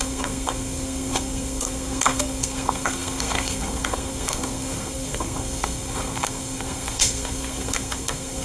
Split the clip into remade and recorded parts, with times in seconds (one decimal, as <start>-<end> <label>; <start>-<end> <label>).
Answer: 0.0-8.4 remade